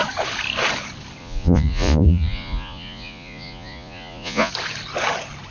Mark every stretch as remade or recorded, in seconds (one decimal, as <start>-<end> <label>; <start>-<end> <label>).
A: 0.0-1.2 recorded; 1.2-4.5 remade; 4.5-5.5 recorded